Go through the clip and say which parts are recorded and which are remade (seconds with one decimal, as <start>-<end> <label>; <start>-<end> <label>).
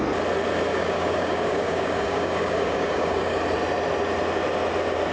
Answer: 0.0-0.7 recorded; 0.7-3.4 remade; 3.4-5.1 recorded